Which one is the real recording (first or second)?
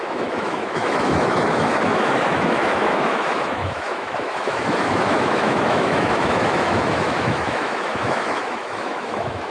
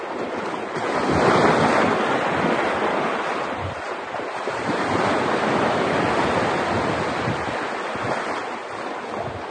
second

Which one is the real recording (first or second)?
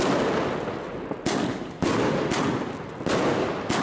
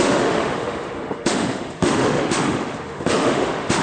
first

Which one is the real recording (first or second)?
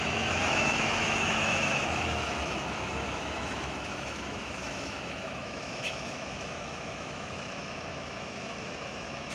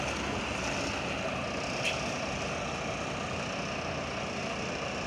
second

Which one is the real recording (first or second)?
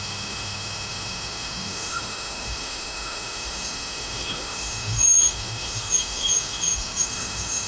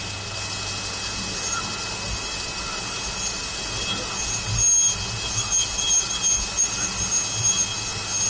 second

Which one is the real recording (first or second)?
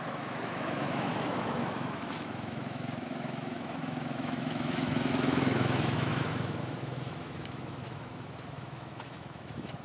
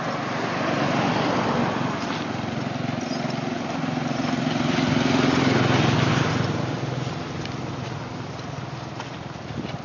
second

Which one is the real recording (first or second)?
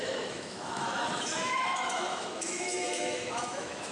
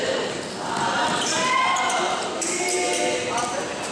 second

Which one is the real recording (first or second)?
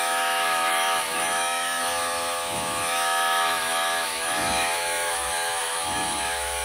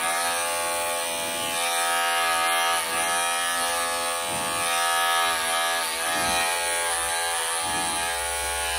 second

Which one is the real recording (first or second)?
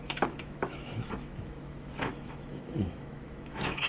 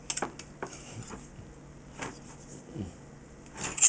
second